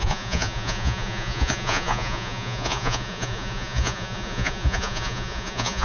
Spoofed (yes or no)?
yes